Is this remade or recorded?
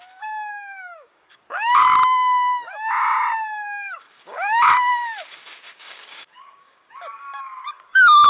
remade